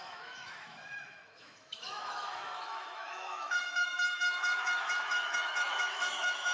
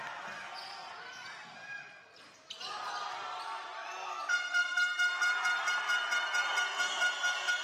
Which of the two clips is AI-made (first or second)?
first